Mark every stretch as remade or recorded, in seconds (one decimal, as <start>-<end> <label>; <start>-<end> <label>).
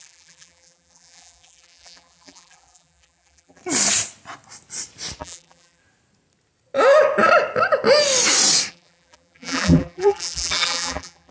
0.0-3.6 remade; 3.6-5.2 recorded; 5.2-5.8 remade; 5.8-8.7 recorded; 8.7-11.3 remade